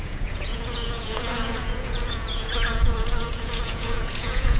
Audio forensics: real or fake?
fake